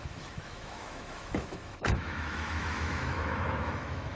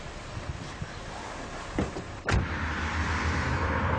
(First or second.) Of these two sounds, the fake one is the first